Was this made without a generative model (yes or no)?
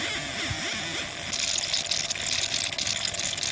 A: yes